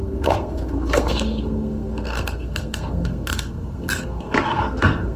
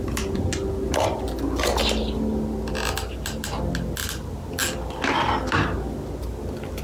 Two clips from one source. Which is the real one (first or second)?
second